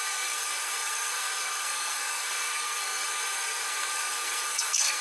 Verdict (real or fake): fake